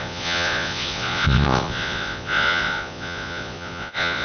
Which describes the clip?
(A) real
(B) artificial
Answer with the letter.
B